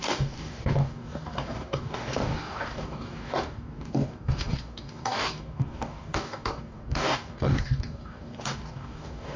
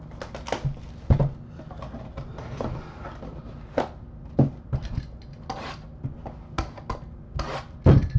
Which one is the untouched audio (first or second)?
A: second